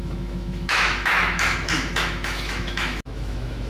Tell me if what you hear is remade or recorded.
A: remade